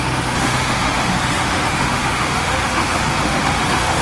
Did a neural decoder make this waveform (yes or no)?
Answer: yes